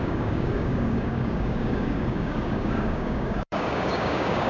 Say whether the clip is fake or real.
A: fake